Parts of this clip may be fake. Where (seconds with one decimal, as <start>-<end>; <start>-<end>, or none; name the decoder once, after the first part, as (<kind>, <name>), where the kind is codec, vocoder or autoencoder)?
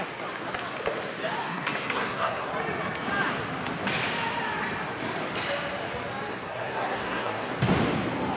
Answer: 1.4-2.5 (codec, SNAC); 6.3-7.5